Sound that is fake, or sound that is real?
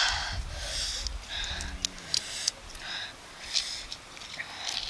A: real